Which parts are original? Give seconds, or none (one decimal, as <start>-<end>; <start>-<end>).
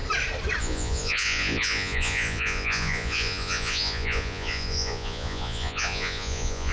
0.0-0.6